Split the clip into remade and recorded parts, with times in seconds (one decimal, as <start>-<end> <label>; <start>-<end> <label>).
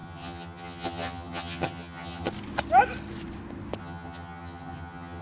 0.0-2.3 remade; 2.3-3.8 recorded; 3.8-5.2 remade